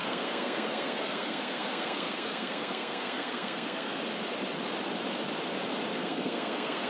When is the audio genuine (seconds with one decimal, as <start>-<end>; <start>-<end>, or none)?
4.0-5.9